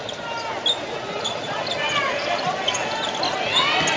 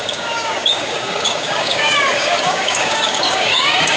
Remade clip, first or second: second